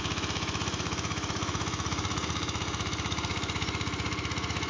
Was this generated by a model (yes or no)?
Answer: yes